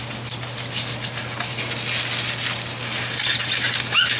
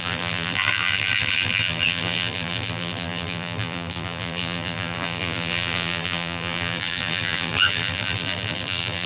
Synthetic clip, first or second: second